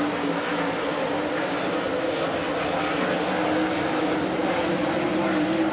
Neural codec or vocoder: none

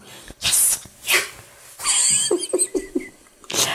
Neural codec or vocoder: none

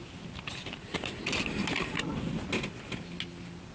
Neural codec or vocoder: none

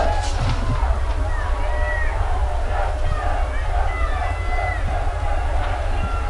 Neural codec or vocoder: none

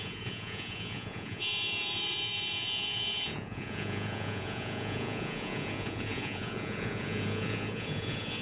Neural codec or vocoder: vocoder, Vocos